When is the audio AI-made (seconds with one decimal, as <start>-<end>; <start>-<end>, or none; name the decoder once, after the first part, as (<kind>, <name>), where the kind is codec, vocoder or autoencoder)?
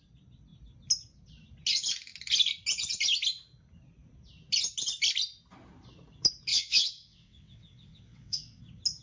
6.5-8.6 (vocoder, WaveNeXt)